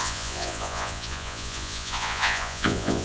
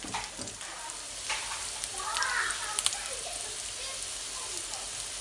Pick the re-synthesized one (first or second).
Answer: first